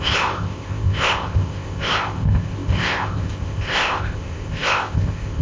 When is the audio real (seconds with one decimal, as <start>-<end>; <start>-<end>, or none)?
none